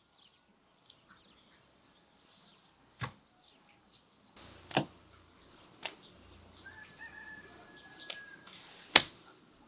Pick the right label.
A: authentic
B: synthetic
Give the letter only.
A